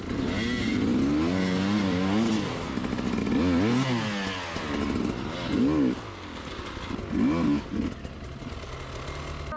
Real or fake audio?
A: real